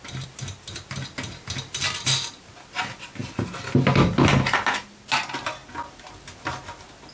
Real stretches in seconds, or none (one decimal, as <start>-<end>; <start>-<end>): 0.0-7.1